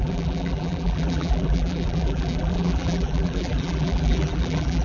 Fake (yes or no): yes